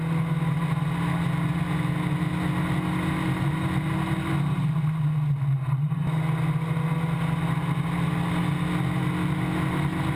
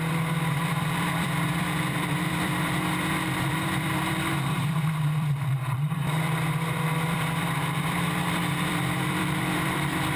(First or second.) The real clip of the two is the first